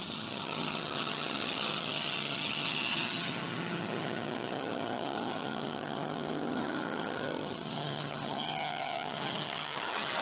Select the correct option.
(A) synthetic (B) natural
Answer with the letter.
A